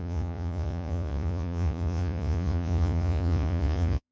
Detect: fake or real fake